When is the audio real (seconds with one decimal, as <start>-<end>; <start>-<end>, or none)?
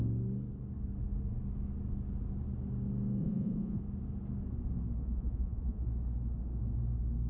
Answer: 0.0-3.2; 3.8-5.0; 5.9-7.3